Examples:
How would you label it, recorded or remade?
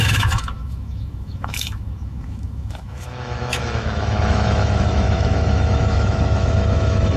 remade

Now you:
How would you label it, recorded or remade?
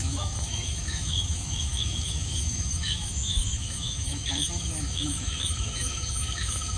remade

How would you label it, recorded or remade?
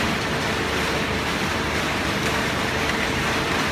recorded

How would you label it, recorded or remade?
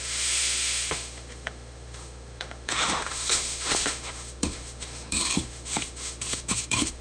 remade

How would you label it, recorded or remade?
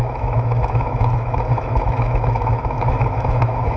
remade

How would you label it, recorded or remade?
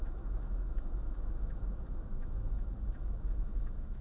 remade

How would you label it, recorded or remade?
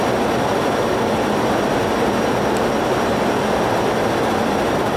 recorded